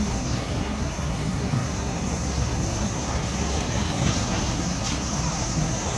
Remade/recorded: remade